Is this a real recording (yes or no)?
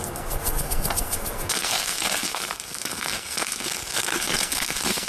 no